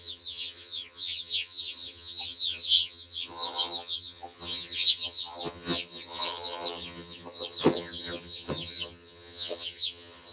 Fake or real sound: fake